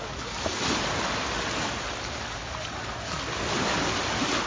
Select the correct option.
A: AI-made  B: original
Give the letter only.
B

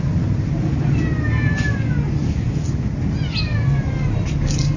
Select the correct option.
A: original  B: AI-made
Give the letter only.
A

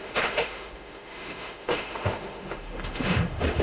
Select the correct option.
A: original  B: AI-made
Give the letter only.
B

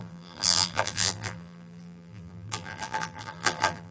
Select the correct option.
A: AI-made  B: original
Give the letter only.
A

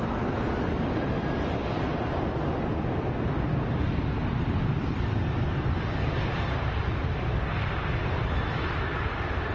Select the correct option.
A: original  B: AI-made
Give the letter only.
A